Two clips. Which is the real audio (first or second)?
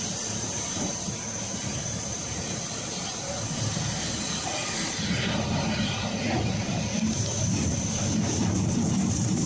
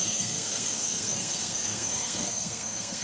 first